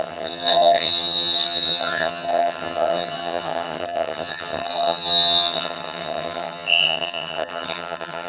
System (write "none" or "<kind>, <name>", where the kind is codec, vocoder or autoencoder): vocoder, HiFi-GAN